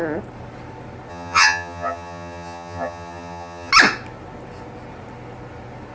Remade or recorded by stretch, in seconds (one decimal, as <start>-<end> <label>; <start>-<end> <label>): 0.0-1.1 recorded; 1.1-3.7 remade; 3.7-5.9 recorded